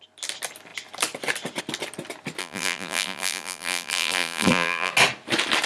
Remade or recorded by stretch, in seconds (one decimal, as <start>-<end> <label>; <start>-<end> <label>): 0.0-2.4 recorded; 2.4-4.9 remade; 4.9-5.7 recorded